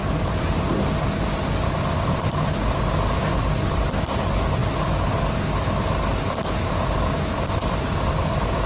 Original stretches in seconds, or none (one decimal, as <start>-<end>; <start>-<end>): 0.6-8.7